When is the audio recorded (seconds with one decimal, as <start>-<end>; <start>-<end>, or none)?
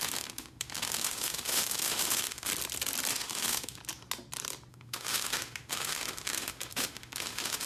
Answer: 2.5-3.1; 3.8-4.7